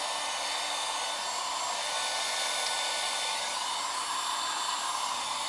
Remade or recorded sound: recorded